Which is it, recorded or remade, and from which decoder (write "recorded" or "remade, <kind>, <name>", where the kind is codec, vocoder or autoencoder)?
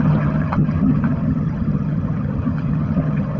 remade, vocoder, HiFi-GAN